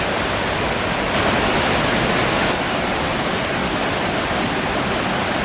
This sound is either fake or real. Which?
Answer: real